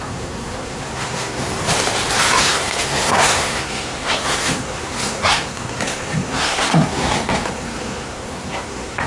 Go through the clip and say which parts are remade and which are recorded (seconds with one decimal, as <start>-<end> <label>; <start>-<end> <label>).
0.0-1.5 remade; 1.5-2.4 recorded; 2.4-9.1 remade

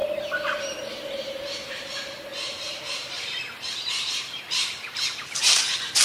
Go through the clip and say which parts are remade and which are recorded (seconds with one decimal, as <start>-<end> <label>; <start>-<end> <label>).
0.0-0.6 recorded; 0.6-6.0 remade

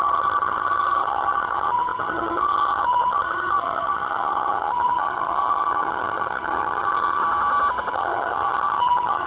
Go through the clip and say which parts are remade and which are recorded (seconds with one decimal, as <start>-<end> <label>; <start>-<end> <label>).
0.0-7.2 remade; 7.2-7.9 recorded; 7.9-9.3 remade

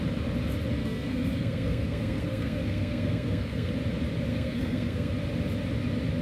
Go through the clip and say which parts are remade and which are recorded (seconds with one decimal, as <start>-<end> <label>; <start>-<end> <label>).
0.0-0.8 recorded; 0.8-3.7 remade; 3.7-4.3 recorded; 4.3-5.1 remade; 5.1-6.2 recorded

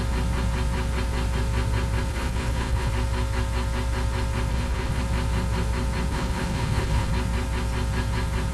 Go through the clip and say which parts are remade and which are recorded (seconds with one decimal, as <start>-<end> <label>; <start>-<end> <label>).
0.0-2.1 recorded; 2.1-2.9 remade; 2.9-4.5 recorded; 4.5-5.0 remade; 5.0-6.1 recorded; 6.1-7.1 remade; 7.1-8.5 recorded